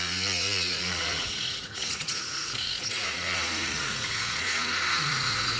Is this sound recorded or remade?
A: remade